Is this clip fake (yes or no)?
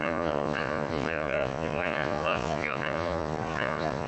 yes